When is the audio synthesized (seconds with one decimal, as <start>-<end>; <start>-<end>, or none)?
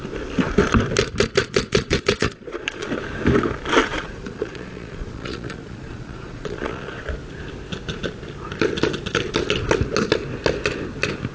1.4-2.9; 3.8-7.1